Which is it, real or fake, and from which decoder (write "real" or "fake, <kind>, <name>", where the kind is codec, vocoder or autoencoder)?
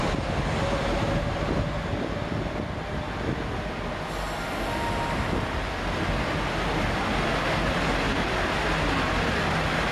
real